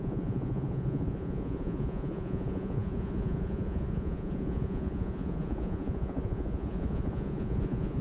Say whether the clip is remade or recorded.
remade